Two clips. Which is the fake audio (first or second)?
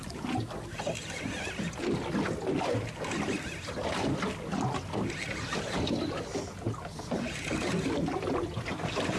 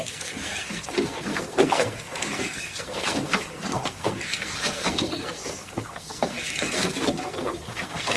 second